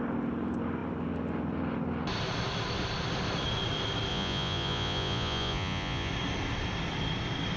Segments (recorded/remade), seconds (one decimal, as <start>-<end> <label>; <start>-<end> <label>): 0.0-4.1 recorded; 4.1-6.1 remade; 6.1-7.6 recorded